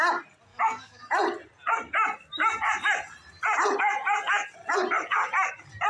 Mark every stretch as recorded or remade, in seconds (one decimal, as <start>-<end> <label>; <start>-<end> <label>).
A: 0.0-0.5 recorded; 0.5-1.0 remade; 1.0-5.9 recorded